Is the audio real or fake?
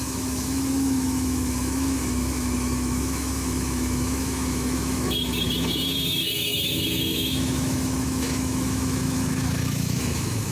fake